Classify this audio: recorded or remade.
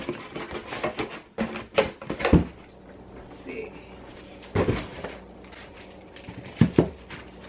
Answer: recorded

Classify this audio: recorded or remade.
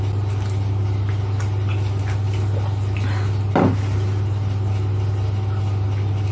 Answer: recorded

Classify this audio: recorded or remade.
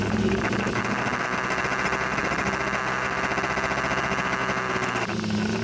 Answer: recorded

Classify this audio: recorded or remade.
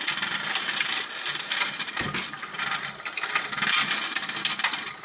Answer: recorded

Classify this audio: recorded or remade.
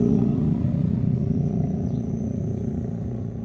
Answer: remade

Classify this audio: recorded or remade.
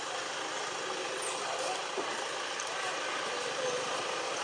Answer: recorded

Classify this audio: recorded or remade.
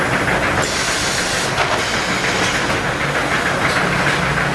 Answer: recorded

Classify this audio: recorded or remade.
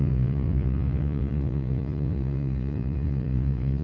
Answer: remade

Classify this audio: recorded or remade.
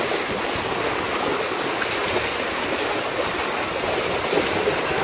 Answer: recorded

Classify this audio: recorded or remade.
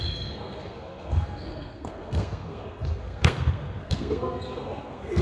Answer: remade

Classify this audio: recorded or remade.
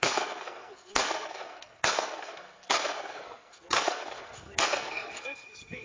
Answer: remade